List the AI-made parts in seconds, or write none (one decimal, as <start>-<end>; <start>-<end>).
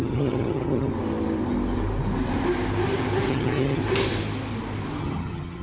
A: 0.0-0.9; 3.3-3.8; 5.0-5.6